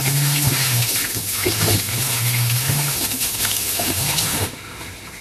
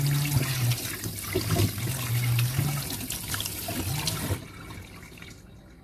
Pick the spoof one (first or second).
first